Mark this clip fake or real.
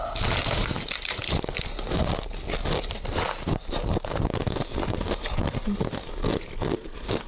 real